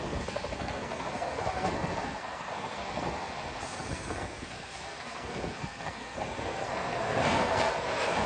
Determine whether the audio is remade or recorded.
remade